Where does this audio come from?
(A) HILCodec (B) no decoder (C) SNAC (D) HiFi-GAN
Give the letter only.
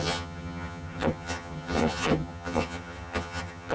D